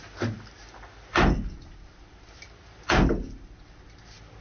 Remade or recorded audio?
recorded